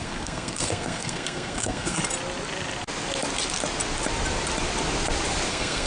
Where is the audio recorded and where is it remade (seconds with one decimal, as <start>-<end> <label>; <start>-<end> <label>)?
0.0-2.0 remade; 2.0-5.5 recorded; 5.5-5.9 remade